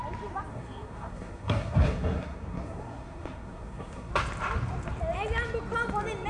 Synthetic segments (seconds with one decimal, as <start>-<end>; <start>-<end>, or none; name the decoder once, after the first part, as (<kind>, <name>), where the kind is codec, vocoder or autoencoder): 0.5-4.1 (codec, SNAC)

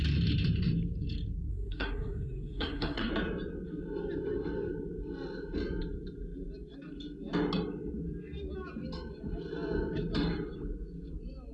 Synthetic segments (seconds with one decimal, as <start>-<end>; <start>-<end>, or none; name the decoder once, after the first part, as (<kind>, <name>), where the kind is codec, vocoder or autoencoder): 1.5-3.1 (codec, SNAC)